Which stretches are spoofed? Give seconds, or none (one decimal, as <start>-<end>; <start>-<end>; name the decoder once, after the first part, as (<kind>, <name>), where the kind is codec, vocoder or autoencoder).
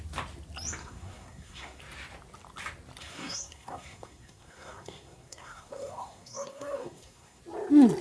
0.8-1.8 (codec, SNAC); 3.0-7.4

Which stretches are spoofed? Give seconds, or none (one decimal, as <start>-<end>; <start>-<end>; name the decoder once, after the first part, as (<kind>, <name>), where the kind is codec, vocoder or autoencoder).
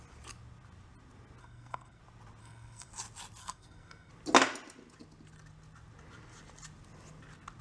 1.4-2.0 (codec, SNAC); 2.4-2.9; 3.4-4.1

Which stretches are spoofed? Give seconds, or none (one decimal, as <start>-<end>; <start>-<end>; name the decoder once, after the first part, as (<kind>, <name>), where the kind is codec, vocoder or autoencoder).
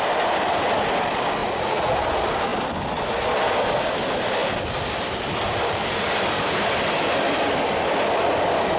1.4-2.0 (vocoder, Vocos)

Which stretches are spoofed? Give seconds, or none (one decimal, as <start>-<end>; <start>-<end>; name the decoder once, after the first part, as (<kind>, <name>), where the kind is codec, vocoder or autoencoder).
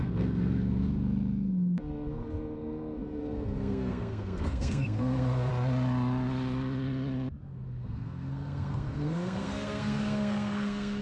0.0-5.5 (codec, SNAC); 7.4-11.0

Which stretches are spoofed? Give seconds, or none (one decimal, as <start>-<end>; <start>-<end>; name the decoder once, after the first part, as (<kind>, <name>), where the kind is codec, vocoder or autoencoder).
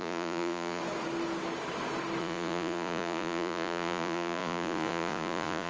0.0-0.8 (vocoder, Vocos); 2.2-5.7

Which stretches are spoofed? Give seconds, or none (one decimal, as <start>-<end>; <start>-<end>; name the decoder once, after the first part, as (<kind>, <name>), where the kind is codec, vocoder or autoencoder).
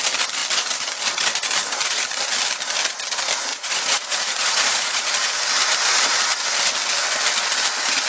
3.5-5.1 (vocoder, Vocos)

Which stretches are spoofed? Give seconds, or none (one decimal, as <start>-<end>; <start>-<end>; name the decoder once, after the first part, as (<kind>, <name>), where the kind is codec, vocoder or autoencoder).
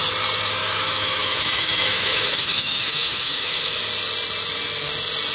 0.6-3.8 (autoencoder, DAC-VAE)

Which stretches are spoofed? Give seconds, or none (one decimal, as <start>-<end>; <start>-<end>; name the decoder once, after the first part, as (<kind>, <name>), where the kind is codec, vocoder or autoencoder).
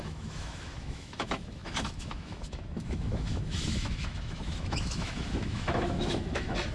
0.0-6.7 (autoencoder, DAC-VAE)